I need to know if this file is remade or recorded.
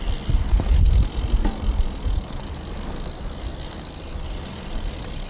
recorded